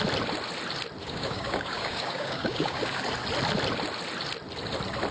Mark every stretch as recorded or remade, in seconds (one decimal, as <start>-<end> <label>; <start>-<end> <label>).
0.0-1.0 recorded; 1.0-3.0 remade; 3.0-5.1 recorded